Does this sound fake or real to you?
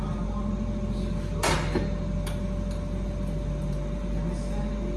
real